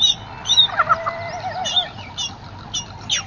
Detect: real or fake real